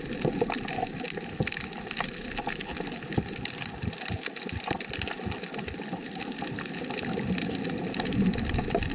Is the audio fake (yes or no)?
no